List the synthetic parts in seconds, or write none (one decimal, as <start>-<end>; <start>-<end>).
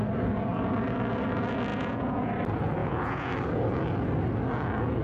1.7-2.3; 2.8-3.3